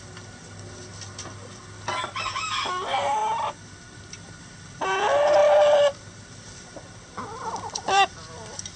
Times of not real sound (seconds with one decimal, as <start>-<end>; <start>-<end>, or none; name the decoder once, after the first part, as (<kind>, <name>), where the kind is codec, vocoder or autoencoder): 0.0-0.9 (vocoder, BigVGAN v2); 1.6-3.2; 4.4-8.8